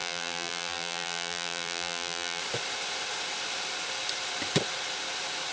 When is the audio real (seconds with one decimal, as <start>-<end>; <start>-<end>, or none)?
2.4-5.5